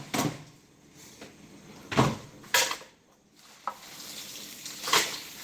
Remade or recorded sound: recorded